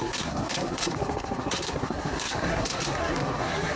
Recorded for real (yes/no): no